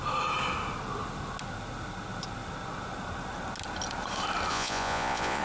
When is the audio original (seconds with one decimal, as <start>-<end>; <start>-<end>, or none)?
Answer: 0.0-4.5